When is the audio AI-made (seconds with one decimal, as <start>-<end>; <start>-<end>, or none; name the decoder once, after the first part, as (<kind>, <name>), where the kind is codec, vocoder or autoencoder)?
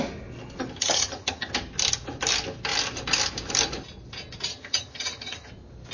0.8-1.5 (vocoder, HiFi-GAN); 4.5-5.5